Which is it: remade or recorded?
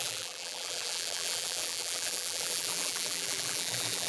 remade